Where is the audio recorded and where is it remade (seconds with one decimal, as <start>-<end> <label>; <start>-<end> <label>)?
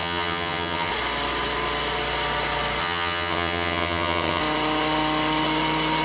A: 0.0-0.9 remade; 0.9-2.8 recorded; 2.8-4.4 remade; 4.4-6.0 recorded